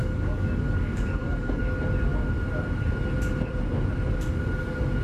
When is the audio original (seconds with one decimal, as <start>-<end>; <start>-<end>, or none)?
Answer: 1.6-5.0